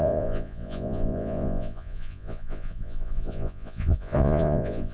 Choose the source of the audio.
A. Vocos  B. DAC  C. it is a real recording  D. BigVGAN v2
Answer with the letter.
A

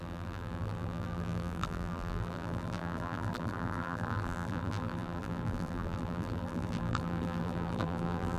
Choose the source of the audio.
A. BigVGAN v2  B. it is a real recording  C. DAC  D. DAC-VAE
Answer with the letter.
A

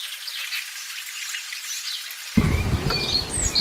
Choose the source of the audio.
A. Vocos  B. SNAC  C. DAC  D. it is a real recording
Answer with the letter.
D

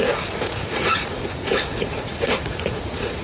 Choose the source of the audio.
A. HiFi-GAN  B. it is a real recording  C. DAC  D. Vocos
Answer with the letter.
D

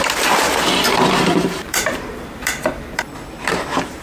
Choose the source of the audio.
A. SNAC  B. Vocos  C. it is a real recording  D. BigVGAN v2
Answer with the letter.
D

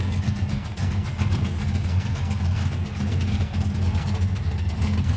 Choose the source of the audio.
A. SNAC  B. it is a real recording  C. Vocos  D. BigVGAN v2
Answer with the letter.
A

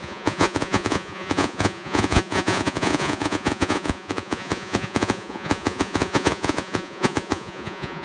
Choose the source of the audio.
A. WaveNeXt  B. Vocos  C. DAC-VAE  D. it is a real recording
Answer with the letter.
B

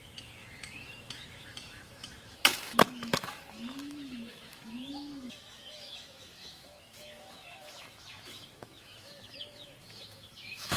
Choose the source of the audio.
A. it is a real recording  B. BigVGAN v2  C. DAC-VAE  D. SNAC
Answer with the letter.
C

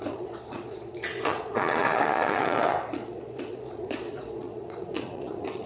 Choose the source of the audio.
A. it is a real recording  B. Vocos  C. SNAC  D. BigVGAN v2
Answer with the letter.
B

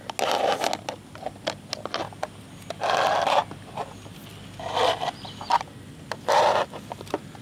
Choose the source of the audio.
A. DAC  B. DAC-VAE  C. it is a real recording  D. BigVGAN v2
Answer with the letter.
C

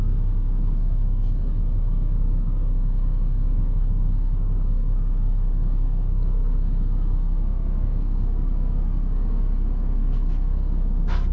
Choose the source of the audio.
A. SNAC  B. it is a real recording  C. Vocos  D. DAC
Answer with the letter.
A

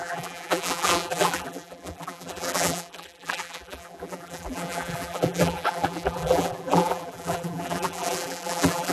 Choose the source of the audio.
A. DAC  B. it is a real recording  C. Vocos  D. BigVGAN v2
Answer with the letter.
D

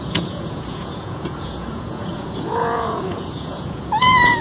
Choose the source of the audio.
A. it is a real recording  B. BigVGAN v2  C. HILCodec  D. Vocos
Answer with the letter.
D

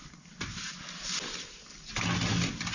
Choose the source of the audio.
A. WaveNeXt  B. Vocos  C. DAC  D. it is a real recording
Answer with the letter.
D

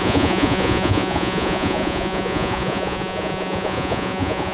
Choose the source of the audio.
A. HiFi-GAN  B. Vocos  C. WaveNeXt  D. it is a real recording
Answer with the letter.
B